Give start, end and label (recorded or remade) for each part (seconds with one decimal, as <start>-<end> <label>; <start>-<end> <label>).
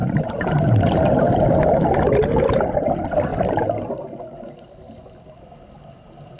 0.0-1.3 remade; 1.3-6.4 recorded